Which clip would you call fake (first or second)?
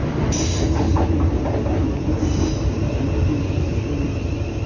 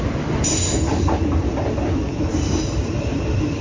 second